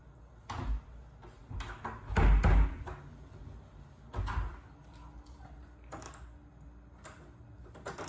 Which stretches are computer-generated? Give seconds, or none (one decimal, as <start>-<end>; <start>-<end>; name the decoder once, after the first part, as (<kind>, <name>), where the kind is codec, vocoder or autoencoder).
none